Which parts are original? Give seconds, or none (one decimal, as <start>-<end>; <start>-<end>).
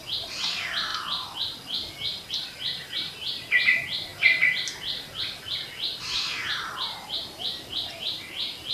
0.0-8.7